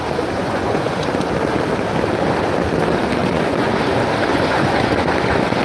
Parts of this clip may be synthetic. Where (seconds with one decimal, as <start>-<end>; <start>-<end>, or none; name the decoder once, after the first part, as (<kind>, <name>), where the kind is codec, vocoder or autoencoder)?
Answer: 0.4-1.0 (vocoder, Vocos); 3.2-3.8; 4.3-5.6